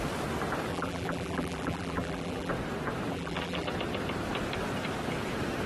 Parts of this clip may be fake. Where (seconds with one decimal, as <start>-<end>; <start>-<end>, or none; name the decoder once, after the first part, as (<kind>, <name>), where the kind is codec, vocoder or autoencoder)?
0.7-2.5 (vocoder, BigVGAN v2); 3.1-3.7